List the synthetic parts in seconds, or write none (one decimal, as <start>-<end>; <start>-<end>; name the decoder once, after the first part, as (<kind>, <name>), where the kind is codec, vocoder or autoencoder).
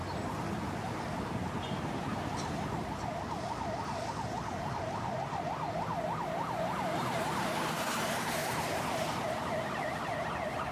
4.7-8.4 (vocoder, BigVGAN v2); 9.5-10.7